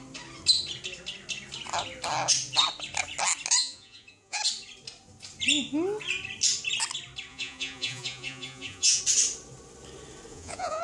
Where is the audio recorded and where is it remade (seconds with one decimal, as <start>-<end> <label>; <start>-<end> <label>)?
0.0-3.6 recorded; 3.6-4.4 remade; 4.4-7.3 recorded; 7.3-9.0 remade; 9.0-10.3 recorded; 10.3-10.8 remade